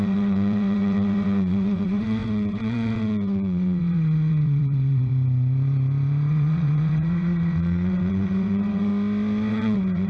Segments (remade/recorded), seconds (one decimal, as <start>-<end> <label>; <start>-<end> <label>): 0.0-5.1 remade; 5.1-6.3 recorded; 6.3-8.9 remade; 8.9-9.5 recorded; 9.5-10.1 remade